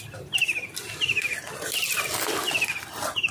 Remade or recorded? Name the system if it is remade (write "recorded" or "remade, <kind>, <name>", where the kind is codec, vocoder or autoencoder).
recorded